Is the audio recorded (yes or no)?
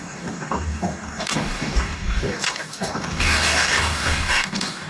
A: no